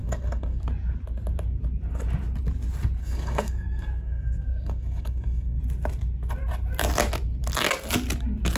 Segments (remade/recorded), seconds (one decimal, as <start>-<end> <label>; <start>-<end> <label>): 0.0-0.6 remade; 0.6-3.0 recorded; 3.0-5.6 remade; 5.6-8.6 recorded